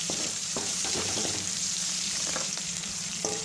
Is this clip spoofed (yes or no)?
yes